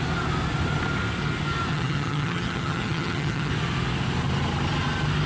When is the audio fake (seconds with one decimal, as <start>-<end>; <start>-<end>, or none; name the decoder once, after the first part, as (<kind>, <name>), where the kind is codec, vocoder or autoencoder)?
1.7-3.5 (vocoder, HiFi-GAN)